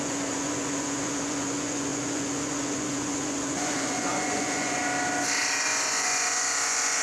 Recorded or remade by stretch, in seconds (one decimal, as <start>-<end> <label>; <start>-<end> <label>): 0.0-4.8 remade; 4.8-5.5 recorded; 5.5-7.0 remade